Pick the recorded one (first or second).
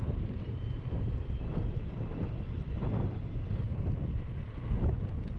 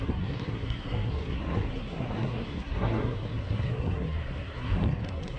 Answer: first